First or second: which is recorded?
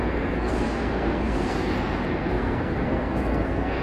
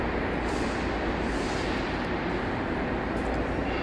second